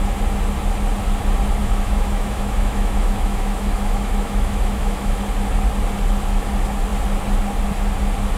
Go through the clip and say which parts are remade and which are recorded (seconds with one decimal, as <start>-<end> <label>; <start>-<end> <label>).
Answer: 0.0-1.6 recorded; 1.6-5.2 remade; 5.2-8.4 recorded